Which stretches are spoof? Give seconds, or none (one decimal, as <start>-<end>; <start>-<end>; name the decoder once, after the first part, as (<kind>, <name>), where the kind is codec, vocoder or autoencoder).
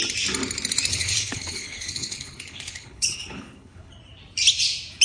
0.9-3.9 (codec, HILCodec)